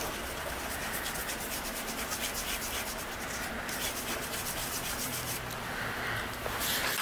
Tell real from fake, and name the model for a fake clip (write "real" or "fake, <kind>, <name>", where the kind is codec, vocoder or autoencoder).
real